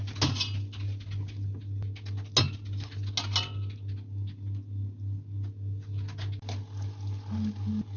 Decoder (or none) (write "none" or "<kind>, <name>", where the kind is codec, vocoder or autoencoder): none